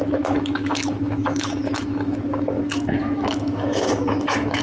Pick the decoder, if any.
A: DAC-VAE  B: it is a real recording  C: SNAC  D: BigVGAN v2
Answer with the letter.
A